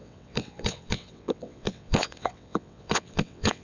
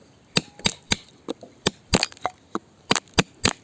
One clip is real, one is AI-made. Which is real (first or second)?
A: second